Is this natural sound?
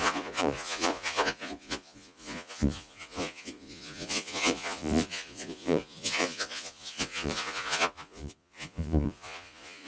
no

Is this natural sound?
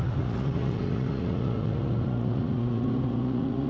no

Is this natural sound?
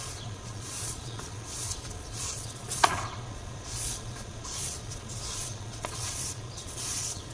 no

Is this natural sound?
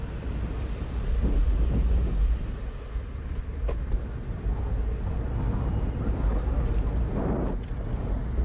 yes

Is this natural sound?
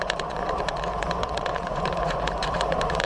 no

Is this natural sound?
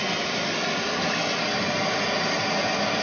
yes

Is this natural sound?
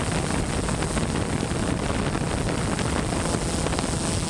yes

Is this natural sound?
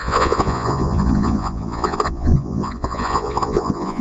no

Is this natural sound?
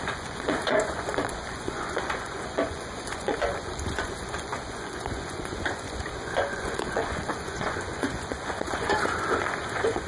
no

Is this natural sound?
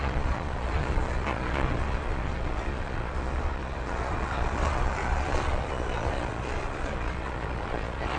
no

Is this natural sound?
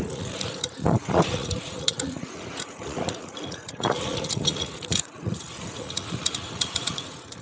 no